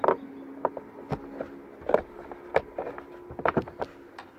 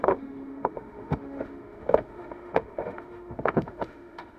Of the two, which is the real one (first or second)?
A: first